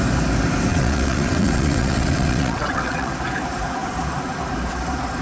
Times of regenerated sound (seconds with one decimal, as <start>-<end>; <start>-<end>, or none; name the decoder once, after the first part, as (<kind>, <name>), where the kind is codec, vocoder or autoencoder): 0.7-3.1 (vocoder, WaveNeXt)